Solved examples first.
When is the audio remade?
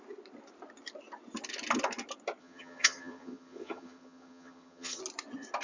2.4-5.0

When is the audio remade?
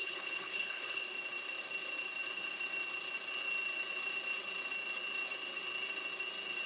0.0-1.0